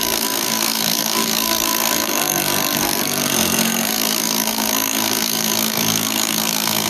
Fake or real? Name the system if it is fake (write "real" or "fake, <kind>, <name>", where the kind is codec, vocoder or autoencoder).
fake, codec, SNAC